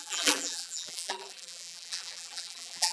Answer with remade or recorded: remade